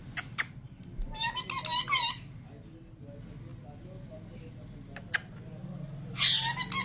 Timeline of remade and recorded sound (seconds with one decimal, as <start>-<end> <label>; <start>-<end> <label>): 0.0-6.8 recorded